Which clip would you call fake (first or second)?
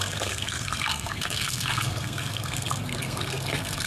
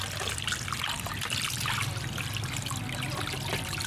first